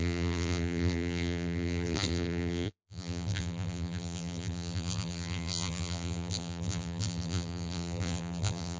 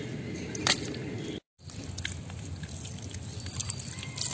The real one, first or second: second